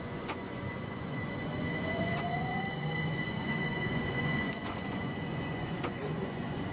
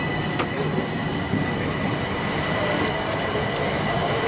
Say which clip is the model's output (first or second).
first